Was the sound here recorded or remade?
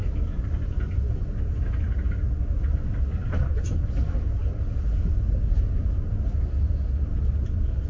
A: recorded